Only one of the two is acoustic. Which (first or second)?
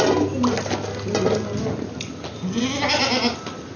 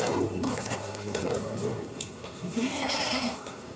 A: first